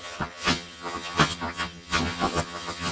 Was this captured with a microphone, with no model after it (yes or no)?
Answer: no